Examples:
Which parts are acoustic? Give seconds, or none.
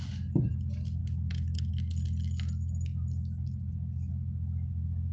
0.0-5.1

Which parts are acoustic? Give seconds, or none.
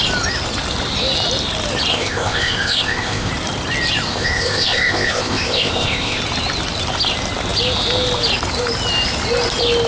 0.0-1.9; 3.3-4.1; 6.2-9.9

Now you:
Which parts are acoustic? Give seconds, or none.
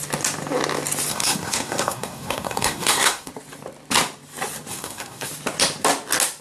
0.0-1.1; 3.3-4.7; 5.3-6.4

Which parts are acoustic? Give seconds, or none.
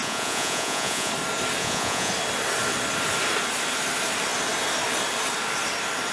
1.1-1.6; 2.1-6.1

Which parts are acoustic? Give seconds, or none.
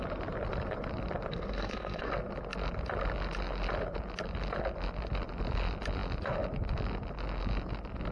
0.0-1.3; 2.1-8.1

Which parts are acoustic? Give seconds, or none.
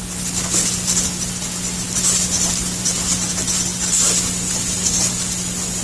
0.0-5.8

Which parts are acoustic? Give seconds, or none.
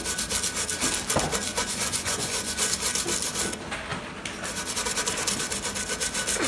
0.0-1.5; 2.7-6.5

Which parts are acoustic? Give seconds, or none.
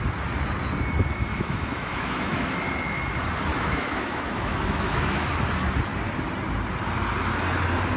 0.0-1.3; 2.5-3.5; 5.3-8.0